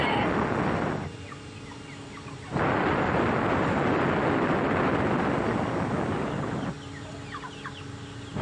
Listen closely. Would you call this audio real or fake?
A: real